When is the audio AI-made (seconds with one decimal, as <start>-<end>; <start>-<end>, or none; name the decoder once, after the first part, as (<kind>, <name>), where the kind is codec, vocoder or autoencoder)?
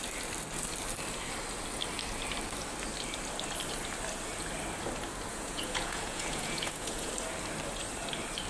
5.3-7.1 (vocoder, Vocos)